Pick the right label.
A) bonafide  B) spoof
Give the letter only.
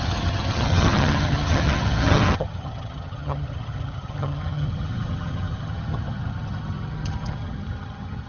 B